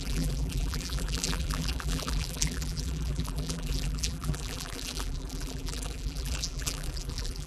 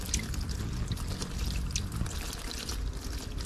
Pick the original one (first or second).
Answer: second